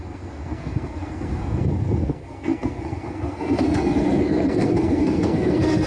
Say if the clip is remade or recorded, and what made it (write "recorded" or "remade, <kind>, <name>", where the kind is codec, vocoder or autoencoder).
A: remade, codec, SNAC